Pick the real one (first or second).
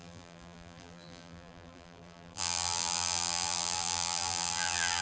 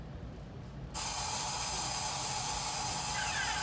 second